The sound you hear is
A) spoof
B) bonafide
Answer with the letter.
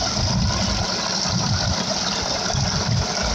B